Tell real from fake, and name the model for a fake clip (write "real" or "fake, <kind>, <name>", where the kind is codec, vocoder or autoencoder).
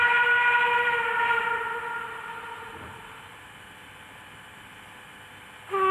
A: real